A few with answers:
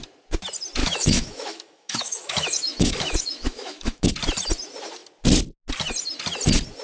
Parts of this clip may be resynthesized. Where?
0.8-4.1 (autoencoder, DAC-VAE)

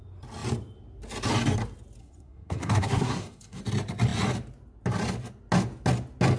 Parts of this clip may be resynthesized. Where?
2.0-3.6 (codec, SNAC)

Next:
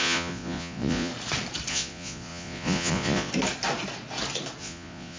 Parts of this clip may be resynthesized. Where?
0.0-1.1 (vocoder, Vocos); 1.7-3.3; 4.6-5.2